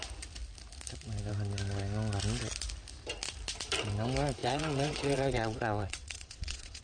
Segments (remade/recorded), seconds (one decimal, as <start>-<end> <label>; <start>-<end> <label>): 0.0-4.4 recorded; 4.4-6.8 remade